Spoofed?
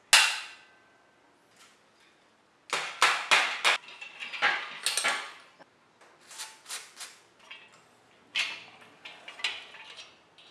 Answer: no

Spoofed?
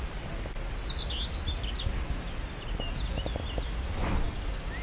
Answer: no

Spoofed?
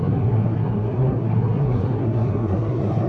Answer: yes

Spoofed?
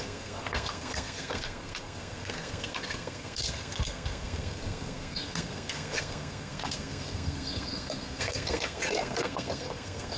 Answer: yes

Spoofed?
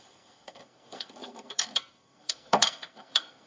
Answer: yes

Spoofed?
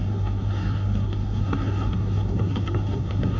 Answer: yes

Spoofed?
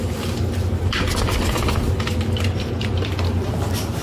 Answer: no